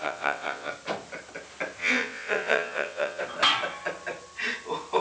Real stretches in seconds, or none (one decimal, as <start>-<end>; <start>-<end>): 0.7-1.8; 3.2-5.0

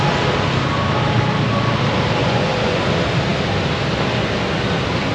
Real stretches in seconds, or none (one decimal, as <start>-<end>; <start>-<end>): 0.0-2.2; 2.8-5.1

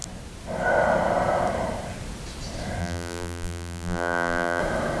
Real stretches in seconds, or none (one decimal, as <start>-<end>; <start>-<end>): 0.0-2.8; 4.6-5.0